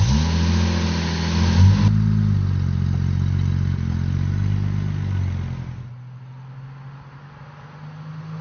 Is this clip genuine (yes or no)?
yes